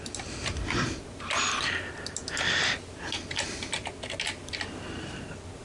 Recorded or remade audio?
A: recorded